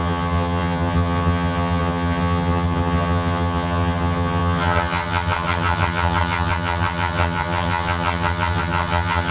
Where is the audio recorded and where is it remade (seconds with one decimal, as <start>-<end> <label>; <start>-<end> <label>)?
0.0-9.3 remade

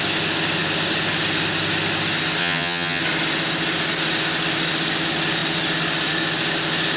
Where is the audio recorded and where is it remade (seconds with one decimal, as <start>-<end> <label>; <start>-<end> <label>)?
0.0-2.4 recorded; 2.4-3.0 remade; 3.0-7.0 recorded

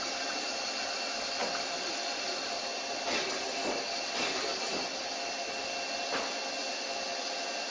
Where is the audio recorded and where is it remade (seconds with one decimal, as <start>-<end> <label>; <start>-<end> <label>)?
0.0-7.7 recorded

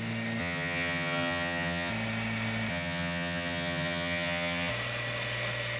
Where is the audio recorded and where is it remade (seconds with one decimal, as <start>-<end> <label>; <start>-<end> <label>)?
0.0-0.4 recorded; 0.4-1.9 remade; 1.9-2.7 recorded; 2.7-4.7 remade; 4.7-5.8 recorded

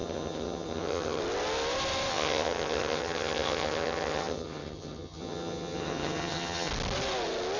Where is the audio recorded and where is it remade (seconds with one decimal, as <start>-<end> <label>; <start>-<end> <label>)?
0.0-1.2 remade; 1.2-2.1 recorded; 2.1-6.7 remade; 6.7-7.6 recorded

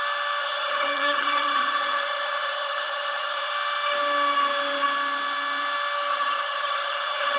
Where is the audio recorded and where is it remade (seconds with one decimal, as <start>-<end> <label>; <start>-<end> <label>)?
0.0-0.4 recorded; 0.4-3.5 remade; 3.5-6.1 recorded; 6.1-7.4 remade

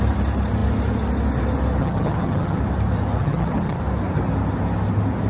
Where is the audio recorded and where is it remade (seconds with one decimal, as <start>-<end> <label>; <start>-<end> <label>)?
0.0-1.8 recorded; 1.8-2.6 remade; 2.6-3.2 recorded; 3.2-3.8 remade; 3.8-5.3 recorded

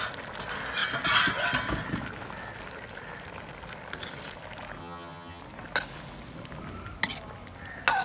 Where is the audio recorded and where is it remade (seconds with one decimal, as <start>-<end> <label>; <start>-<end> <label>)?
0.0-4.8 recorded; 4.8-5.4 remade; 5.4-8.0 recorded